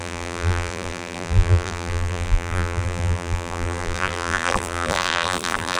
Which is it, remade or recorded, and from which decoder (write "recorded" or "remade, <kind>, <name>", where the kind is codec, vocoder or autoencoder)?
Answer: remade, vocoder, BigVGAN v2